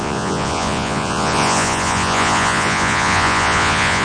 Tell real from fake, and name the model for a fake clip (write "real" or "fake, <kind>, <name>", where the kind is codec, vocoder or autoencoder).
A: fake, vocoder, Vocos